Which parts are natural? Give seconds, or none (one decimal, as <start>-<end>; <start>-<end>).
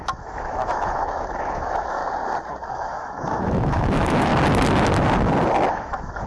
2.0-2.7; 4.3-5.7